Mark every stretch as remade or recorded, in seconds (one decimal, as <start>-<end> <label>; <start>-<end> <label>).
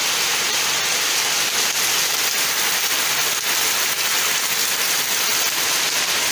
0.0-0.7 remade; 0.7-6.3 recorded